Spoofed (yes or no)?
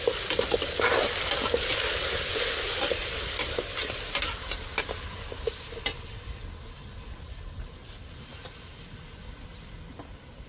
no